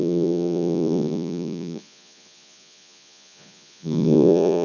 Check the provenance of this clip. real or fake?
fake